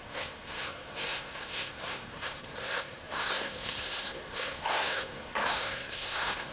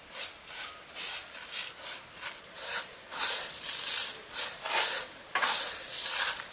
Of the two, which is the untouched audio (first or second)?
second